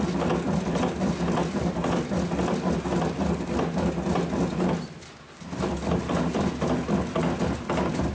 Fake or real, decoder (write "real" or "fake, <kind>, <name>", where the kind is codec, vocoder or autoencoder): real